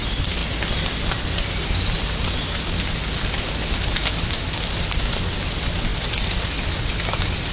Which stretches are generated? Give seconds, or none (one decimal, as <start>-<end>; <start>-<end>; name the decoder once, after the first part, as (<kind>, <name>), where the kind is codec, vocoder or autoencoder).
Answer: none